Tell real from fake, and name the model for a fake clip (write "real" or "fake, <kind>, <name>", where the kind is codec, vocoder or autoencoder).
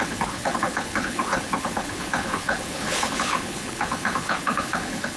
fake, codec, HILCodec